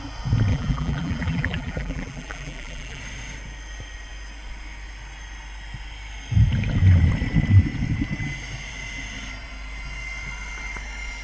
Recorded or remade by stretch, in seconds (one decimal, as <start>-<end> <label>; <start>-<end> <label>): 0.0-0.5 recorded; 0.5-3.0 remade; 3.0-11.2 recorded